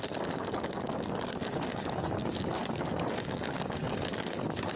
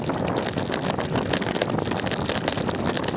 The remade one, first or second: first